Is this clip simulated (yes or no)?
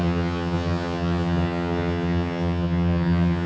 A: yes